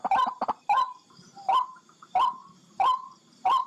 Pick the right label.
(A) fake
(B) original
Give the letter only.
A